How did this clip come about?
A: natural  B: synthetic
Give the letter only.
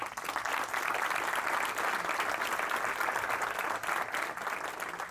A